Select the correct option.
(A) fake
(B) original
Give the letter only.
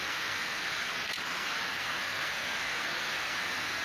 A